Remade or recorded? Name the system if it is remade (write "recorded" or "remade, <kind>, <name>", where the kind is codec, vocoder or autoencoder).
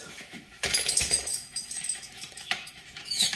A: remade, autoencoder, DAC-VAE